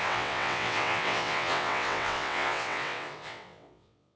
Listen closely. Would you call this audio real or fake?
fake